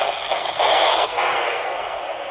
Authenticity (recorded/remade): remade